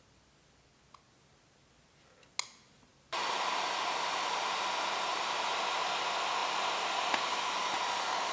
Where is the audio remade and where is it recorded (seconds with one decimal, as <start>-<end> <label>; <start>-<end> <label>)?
0.0-2.9 recorded; 2.9-3.6 remade; 3.6-6.4 recorded; 6.4-7.7 remade; 7.7-8.3 recorded